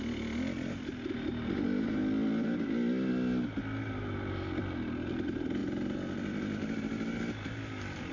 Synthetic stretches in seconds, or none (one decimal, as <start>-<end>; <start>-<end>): none